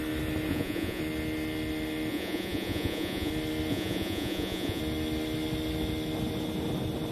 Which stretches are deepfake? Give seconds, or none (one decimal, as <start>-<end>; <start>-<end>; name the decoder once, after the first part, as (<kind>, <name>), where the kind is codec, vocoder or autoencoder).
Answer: 0.5-1.0 (vocoder, Vocos); 2.1-3.3; 3.7-4.8